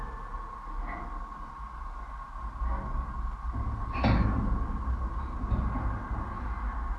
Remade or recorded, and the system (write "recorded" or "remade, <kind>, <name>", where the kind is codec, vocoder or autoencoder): recorded